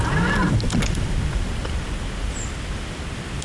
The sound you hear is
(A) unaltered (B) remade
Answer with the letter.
A